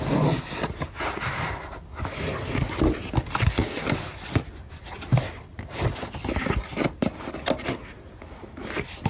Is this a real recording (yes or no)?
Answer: yes